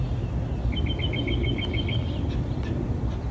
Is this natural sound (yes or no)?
yes